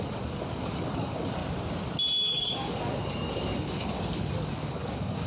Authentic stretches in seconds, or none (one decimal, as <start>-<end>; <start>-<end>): 1.4-2.3